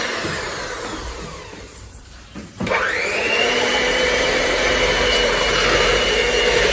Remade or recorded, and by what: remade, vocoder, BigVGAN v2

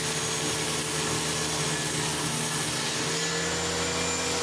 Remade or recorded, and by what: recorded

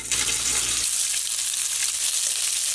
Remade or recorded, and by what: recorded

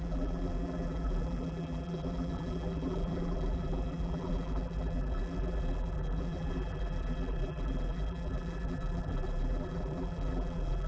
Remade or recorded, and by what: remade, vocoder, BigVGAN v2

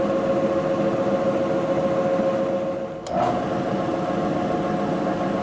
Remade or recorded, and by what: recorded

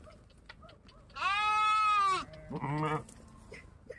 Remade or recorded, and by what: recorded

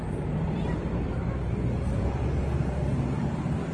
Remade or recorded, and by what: remade, vocoder, BigVGAN v2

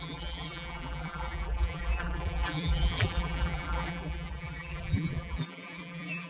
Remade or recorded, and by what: remade, vocoder, BigVGAN v2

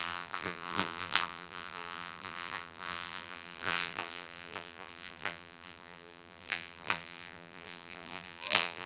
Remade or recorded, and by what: remade, vocoder, BigVGAN v2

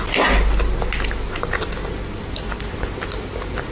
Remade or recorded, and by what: recorded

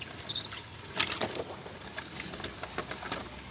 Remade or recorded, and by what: recorded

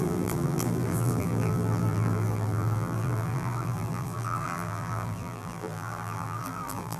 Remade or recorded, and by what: remade, vocoder, BigVGAN v2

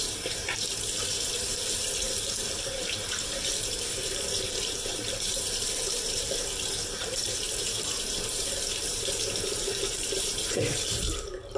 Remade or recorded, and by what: remade, vocoder, BigVGAN v2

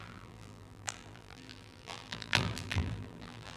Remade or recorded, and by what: remade, vocoder, BigVGAN v2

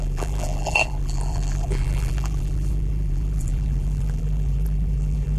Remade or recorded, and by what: remade, vocoder, BigVGAN v2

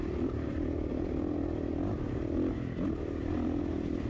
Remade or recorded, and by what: remade, vocoder, BigVGAN v2